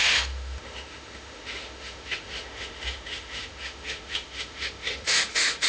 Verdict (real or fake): fake